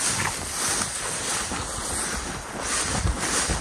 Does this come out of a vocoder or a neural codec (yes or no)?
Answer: no